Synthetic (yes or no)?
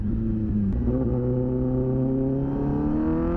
no